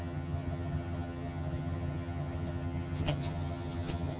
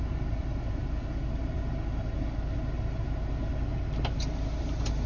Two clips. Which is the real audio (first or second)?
second